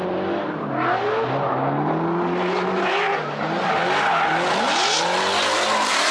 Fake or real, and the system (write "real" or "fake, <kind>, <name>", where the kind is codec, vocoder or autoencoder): real